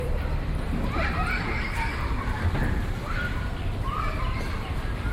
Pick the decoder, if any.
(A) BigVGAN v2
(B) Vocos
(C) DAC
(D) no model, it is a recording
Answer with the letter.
D